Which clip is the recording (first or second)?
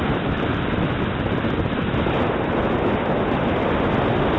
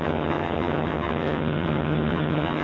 first